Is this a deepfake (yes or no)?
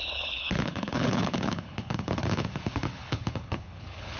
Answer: yes